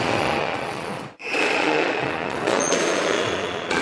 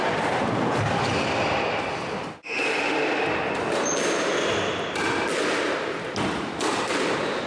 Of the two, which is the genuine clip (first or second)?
second